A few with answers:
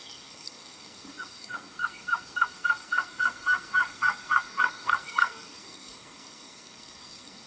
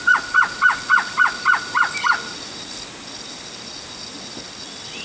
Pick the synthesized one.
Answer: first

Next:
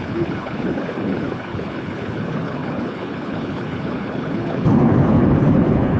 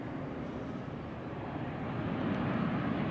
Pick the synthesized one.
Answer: first